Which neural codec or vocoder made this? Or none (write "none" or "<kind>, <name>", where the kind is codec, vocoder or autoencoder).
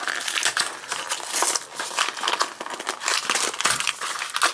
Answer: none